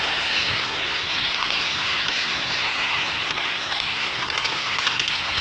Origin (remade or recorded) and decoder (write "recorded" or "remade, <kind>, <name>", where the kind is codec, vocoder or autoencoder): remade, codec, SNAC